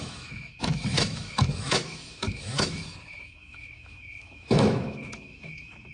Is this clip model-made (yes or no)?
yes